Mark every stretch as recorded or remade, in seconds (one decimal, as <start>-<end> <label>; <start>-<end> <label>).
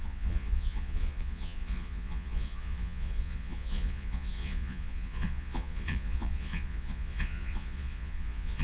0.0-8.6 remade